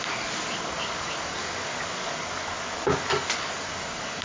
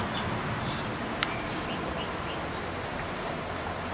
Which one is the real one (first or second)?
second